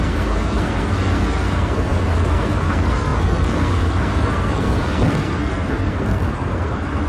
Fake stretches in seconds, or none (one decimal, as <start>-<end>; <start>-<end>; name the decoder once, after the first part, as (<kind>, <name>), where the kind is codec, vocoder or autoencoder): 0.0-7.1 (codec, SNAC)